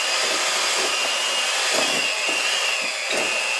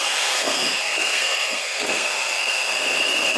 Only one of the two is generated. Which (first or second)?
second